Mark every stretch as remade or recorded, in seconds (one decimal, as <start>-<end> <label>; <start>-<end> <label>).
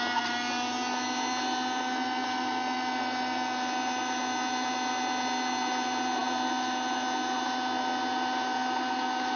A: 0.0-9.4 recorded